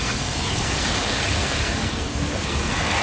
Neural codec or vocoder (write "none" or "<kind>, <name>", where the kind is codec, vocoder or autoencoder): codec, SNAC